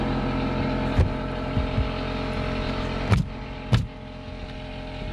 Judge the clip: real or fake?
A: real